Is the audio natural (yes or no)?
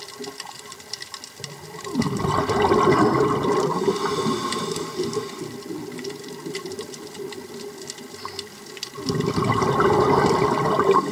yes